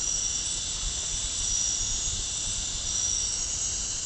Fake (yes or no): no